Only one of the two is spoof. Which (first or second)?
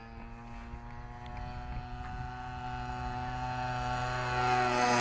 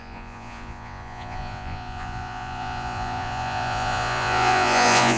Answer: second